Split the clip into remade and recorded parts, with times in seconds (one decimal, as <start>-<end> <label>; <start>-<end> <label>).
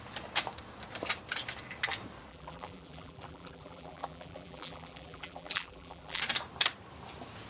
0.0-2.3 recorded; 2.3-6.2 remade; 6.2-7.5 recorded